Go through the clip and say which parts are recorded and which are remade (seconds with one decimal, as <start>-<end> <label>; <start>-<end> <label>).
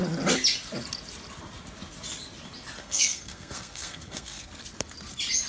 0.0-2.8 recorded; 2.8-4.5 remade; 4.5-5.5 recorded